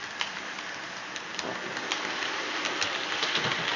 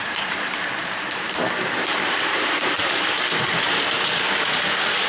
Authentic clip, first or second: first